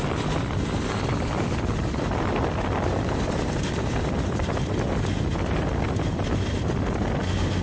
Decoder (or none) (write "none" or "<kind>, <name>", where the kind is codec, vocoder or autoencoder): none